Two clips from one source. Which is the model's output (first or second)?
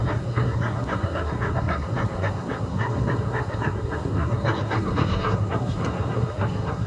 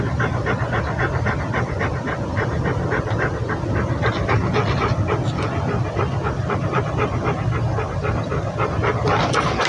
first